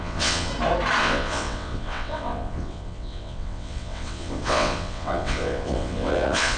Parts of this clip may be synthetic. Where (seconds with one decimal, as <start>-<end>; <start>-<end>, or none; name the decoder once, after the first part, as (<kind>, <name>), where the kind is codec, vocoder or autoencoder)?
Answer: 0.0-0.5 (vocoder, WaveNeXt); 1.0-6.6